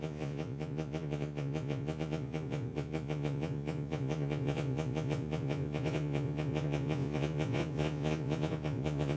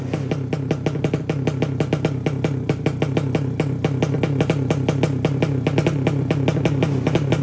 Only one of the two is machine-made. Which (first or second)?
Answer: first